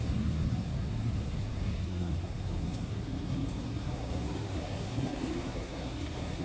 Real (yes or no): no